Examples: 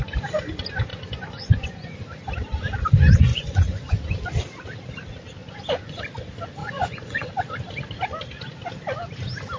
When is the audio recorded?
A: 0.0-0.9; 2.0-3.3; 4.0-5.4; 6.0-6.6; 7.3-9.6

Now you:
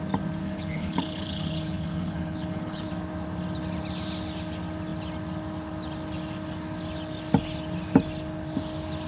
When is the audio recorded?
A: 0.0-0.4; 2.9-9.1

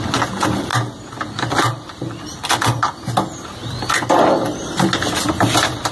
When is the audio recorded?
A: 0.0-5.9

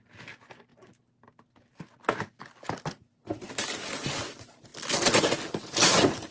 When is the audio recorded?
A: 0.0-6.3